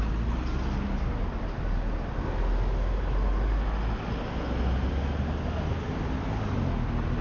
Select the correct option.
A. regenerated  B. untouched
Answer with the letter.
B